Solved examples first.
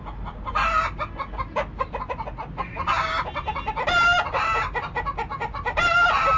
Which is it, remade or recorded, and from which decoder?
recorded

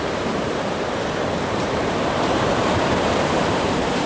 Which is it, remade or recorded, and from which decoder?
remade, vocoder, BigVGAN v2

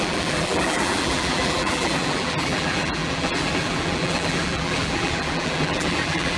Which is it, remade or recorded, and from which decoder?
remade, vocoder, BigVGAN v2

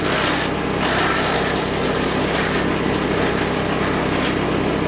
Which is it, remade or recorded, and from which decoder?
recorded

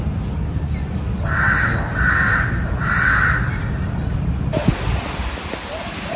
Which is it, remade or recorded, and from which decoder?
recorded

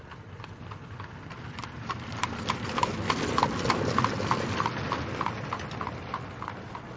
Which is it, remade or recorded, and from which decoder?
recorded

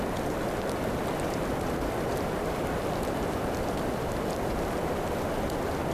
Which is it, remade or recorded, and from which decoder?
recorded